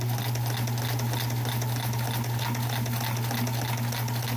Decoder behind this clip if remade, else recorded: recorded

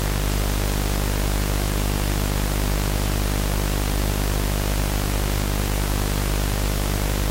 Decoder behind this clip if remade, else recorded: recorded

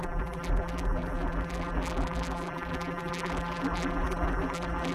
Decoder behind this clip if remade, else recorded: remade, vocoder, BigVGAN v2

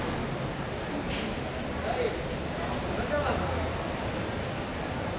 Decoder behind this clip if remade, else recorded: recorded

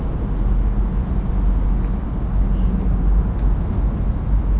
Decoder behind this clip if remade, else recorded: recorded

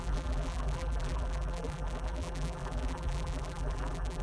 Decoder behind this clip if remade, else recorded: remade, vocoder, BigVGAN v2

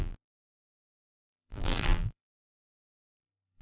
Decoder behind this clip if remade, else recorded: remade, vocoder, BigVGAN v2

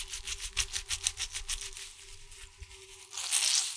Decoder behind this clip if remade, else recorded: recorded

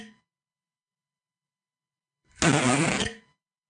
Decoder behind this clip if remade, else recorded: recorded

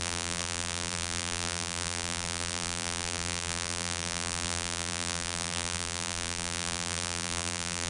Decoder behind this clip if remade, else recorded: remade, vocoder, BigVGAN v2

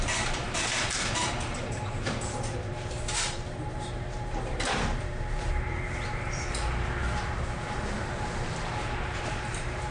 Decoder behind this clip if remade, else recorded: remade, vocoder, BigVGAN v2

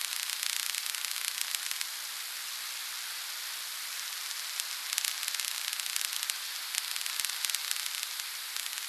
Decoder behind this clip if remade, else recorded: recorded